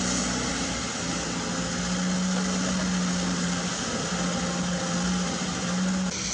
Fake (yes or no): no